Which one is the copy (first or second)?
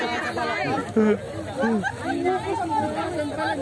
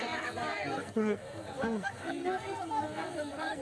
second